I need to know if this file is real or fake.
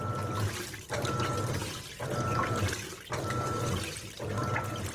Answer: real